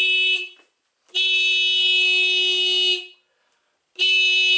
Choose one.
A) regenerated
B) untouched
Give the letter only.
B